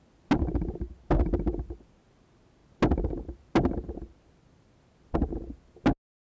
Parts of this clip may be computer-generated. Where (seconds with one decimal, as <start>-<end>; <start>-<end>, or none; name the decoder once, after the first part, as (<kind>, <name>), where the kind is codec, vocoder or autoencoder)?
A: none